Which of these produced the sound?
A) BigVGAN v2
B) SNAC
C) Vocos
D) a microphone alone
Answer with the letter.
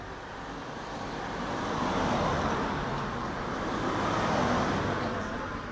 D